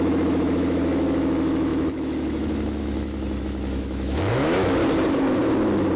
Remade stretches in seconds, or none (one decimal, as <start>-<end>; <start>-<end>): 0.0-4.8